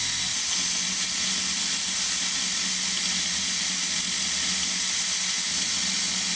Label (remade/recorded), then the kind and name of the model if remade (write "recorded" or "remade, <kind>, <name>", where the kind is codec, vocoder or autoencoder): recorded